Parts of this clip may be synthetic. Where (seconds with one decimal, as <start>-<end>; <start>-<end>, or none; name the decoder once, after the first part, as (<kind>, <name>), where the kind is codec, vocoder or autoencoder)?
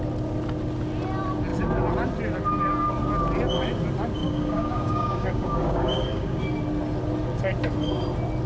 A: 4.2-6.4 (codec, DAC)